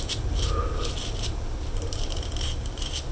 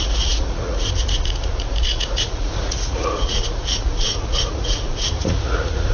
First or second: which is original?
first